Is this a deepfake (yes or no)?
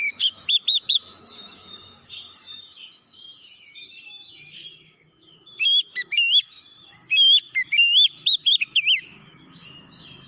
yes